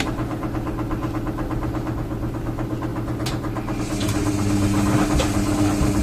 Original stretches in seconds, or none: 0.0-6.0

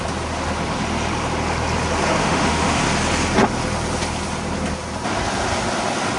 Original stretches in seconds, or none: 0.0-2.2; 2.8-6.2

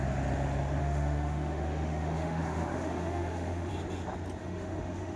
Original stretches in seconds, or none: 0.0-0.8; 3.7-4.4

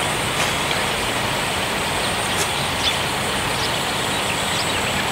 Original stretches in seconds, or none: 0.0-5.1